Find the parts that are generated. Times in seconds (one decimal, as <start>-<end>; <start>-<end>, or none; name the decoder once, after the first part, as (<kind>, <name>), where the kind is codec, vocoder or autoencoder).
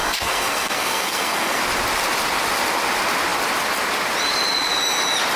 0.0-1.6 (codec, SNAC)